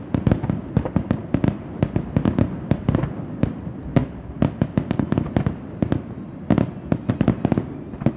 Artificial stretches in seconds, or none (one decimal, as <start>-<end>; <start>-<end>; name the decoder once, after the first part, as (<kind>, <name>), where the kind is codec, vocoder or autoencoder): none